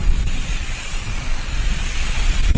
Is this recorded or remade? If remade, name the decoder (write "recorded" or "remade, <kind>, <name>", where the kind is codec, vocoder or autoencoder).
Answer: remade, vocoder, Vocos